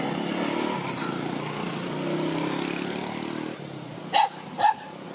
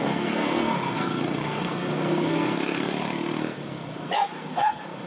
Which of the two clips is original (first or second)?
first